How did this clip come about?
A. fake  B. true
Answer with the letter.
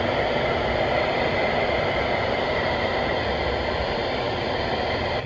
A